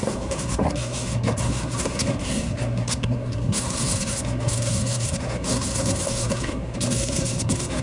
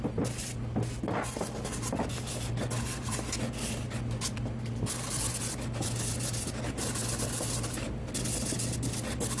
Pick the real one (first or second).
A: second